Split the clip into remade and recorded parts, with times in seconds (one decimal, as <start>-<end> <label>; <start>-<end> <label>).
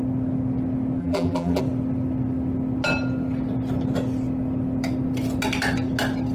0.0-1.0 recorded; 1.0-1.6 remade; 1.6-6.3 recorded